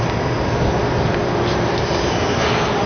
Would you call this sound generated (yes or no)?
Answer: no